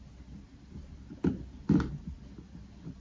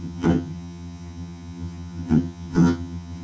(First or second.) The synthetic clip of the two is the second